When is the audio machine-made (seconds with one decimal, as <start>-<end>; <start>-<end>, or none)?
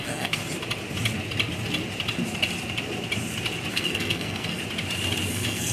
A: 0.0-0.4; 3.7-4.6; 5.3-5.7